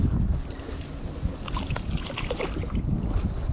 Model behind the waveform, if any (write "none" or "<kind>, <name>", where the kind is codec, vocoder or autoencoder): none